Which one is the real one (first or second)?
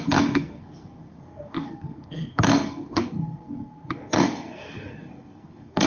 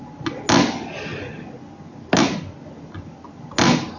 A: second